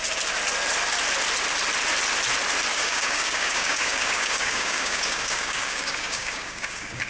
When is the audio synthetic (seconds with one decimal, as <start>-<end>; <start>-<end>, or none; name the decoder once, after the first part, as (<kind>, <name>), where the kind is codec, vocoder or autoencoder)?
2.7-7.1 (codec, DAC)